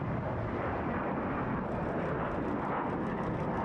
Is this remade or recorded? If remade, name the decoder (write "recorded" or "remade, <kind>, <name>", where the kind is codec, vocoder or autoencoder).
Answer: recorded